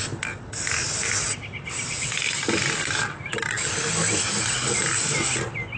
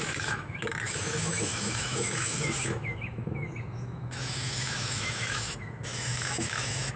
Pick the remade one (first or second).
second